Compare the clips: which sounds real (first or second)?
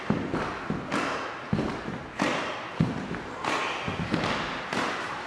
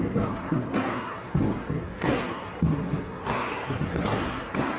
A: first